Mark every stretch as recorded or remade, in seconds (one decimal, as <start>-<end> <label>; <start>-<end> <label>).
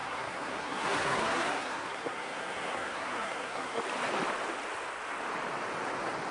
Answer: 0.0-3.8 remade; 3.8-6.3 recorded